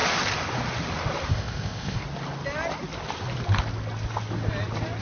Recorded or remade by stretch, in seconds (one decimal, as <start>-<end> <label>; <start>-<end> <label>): 0.0-1.3 recorded; 1.3-2.0 remade; 2.0-5.0 recorded